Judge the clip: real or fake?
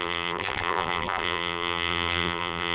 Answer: fake